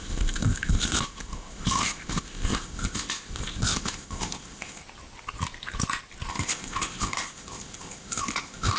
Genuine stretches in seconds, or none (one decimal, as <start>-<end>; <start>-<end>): 4.8-6.3